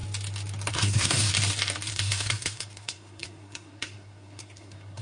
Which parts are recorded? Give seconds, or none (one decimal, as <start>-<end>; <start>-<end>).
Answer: 0.0-0.7; 1.3-1.9